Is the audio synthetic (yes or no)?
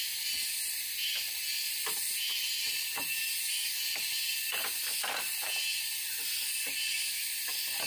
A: no